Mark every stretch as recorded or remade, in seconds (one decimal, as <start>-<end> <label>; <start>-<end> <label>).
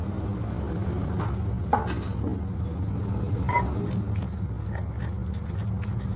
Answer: 0.0-6.2 recorded